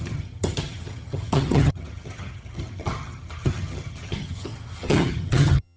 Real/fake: fake